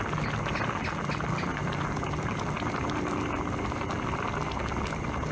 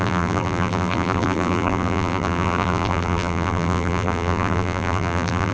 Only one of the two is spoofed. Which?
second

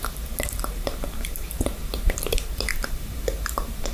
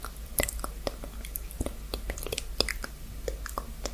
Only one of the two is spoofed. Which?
first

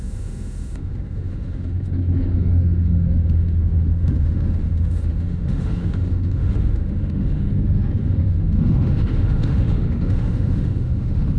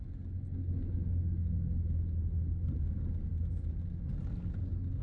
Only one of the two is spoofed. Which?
first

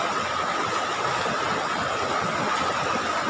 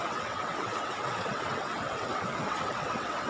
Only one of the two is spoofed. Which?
second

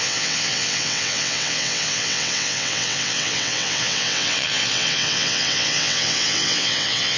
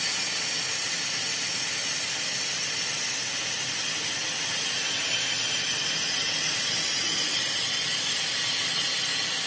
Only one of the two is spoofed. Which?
first